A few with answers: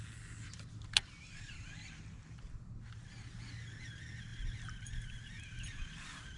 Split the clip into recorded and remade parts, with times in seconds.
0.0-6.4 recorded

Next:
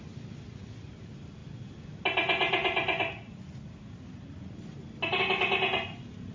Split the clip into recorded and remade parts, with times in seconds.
0.0-6.3 recorded

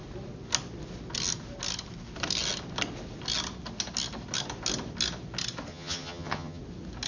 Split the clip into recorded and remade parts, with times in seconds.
0.0-5.7 recorded; 5.7-6.6 remade; 6.6-7.1 recorded

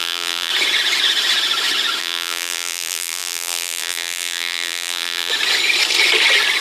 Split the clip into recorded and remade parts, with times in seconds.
0.0-0.5 remade; 0.5-2.0 recorded; 2.0-5.3 remade; 5.3-6.6 recorded